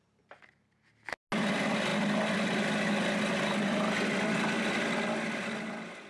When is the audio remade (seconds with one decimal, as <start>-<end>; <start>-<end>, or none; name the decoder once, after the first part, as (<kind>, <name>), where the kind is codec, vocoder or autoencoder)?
none